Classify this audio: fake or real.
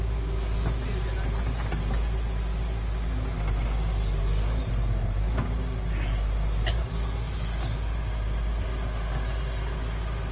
real